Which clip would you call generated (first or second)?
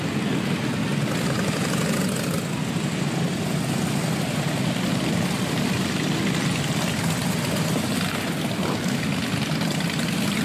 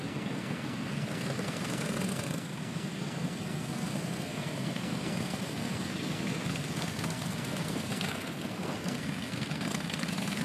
second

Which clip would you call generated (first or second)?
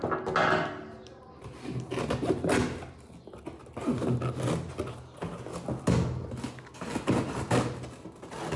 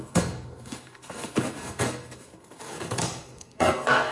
second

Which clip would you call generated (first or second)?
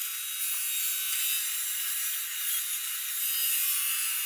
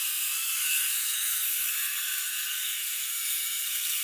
second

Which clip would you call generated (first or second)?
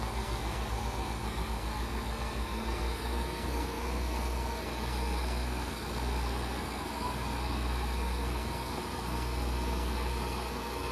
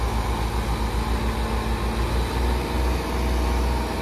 first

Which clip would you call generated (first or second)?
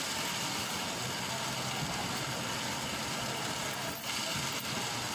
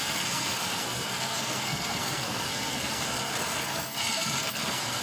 second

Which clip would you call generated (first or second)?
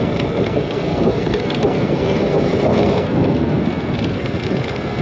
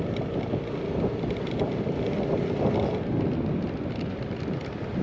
first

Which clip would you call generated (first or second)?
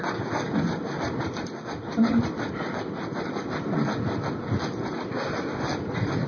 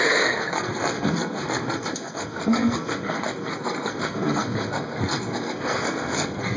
second